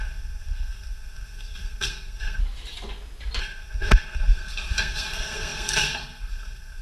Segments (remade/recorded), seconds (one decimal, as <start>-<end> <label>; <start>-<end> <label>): 0.0-2.4 remade; 2.4-3.4 recorded; 3.4-6.8 remade